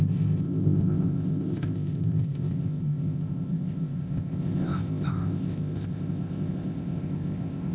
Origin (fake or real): fake